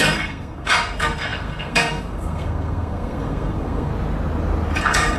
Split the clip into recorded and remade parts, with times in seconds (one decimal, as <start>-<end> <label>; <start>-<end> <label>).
0.0-3.9 remade; 3.9-4.8 recorded; 4.8-5.2 remade